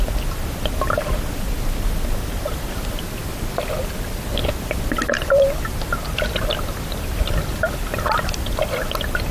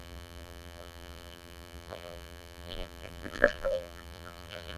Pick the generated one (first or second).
second